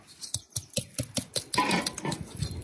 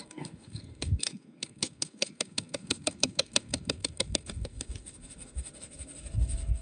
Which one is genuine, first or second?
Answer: first